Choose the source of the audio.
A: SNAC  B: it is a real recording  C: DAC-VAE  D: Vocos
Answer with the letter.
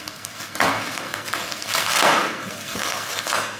A